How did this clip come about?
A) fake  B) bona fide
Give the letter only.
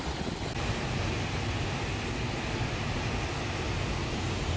B